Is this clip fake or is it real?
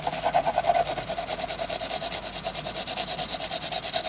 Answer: real